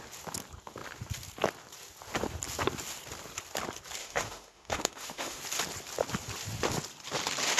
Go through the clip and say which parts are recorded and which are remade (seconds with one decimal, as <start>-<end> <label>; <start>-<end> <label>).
0.0-4.0 recorded; 4.0-5.4 remade; 5.4-7.6 recorded